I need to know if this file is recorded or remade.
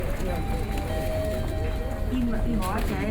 recorded